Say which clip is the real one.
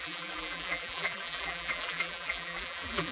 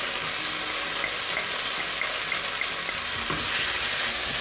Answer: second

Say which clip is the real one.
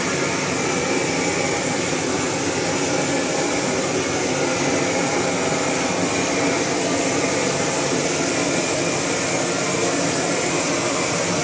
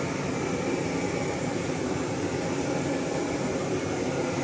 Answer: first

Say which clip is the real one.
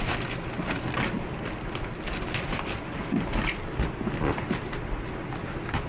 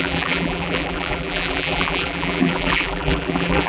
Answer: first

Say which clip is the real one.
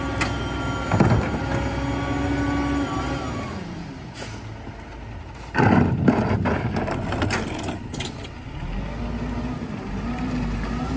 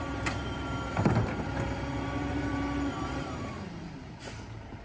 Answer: first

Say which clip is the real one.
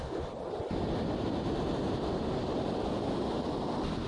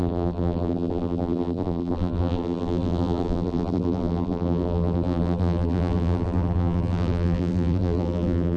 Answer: first